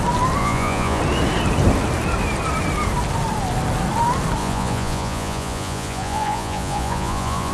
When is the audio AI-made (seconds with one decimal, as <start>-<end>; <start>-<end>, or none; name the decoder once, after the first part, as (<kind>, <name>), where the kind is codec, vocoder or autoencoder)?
0.4-1.0 (vocoder, Vocos); 4.4-7.5